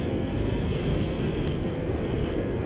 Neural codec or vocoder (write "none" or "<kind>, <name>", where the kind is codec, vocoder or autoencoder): codec, SNAC